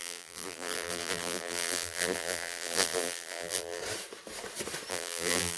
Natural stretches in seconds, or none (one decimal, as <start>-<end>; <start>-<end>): 3.8-4.9